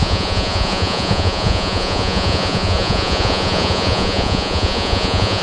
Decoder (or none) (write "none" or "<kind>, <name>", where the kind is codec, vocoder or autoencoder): vocoder, Vocos